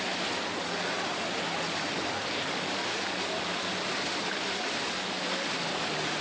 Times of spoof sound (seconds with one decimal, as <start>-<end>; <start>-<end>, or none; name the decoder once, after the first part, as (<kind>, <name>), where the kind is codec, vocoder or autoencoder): none